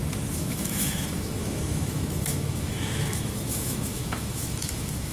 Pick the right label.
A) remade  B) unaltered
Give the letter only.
A